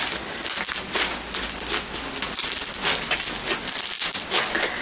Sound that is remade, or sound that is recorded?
recorded